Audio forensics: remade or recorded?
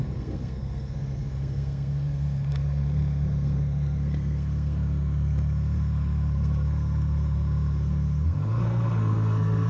remade